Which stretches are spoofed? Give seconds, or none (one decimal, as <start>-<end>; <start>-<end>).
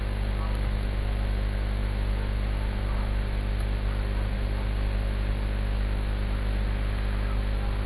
none